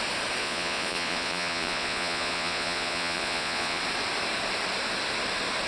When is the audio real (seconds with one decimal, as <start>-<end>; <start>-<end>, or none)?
0.0-0.4; 3.8-5.7